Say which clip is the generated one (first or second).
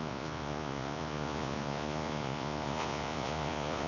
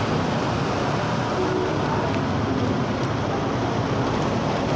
first